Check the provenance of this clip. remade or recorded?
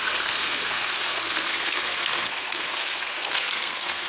remade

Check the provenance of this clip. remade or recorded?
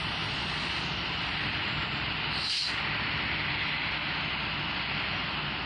recorded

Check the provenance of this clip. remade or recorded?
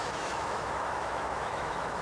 remade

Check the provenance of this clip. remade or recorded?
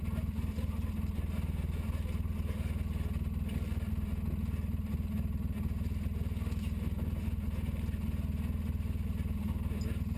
recorded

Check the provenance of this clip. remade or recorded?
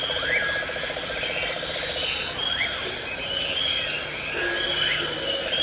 recorded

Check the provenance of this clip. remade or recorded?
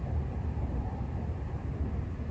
recorded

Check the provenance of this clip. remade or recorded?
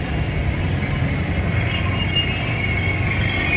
recorded